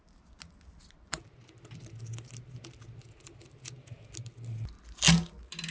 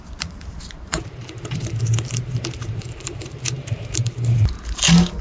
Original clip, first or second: first